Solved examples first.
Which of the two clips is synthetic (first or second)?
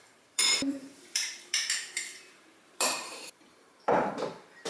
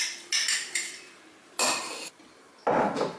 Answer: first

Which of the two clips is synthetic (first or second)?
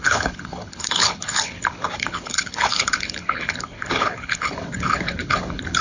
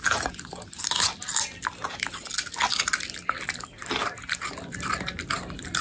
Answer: first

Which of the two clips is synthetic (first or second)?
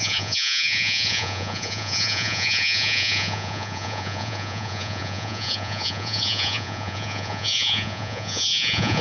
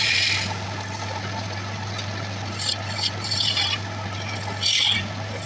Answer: first